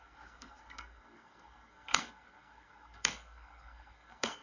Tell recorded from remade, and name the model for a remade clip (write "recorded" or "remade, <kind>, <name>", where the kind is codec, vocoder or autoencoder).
remade, codec, SNAC